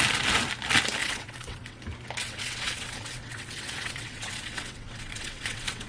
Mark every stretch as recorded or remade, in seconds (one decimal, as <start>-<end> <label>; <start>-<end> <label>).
0.0-1.0 recorded; 1.0-1.8 remade; 1.8-2.2 recorded; 2.2-5.9 remade